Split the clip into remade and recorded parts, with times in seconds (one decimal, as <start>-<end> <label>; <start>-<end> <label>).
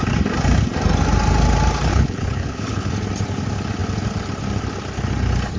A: 0.0-1.9 recorded; 1.9-2.9 remade; 2.9-5.6 recorded